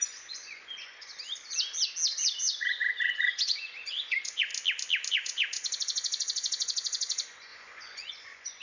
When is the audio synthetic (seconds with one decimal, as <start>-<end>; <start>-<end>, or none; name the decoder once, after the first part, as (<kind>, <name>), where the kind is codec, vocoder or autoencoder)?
0.0-1.1 (vocoder, Vocos); 2.1-4.5; 5.1-8.6